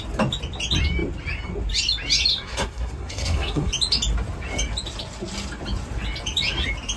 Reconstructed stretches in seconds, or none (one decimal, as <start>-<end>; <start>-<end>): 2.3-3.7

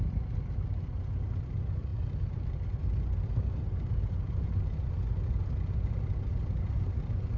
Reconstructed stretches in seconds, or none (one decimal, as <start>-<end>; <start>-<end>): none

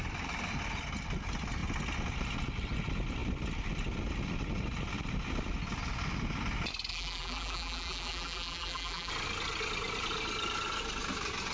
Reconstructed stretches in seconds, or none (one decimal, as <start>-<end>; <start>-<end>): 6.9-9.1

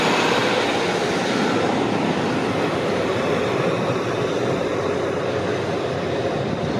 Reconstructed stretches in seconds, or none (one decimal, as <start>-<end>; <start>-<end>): none

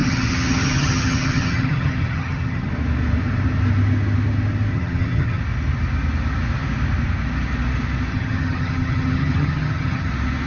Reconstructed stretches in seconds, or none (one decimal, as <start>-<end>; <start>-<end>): 0.0-2.7; 4.7-5.4; 8.1-10.1

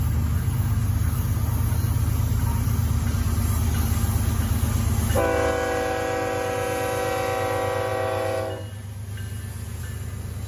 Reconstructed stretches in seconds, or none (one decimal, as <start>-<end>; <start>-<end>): none

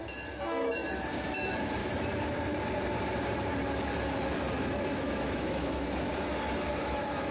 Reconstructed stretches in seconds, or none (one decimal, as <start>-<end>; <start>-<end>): 0.0-1.8; 4.6-6.1; 6.8-7.3

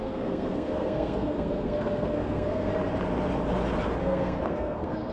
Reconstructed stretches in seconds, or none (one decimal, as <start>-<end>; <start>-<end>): 0.0-2.7; 4.0-5.1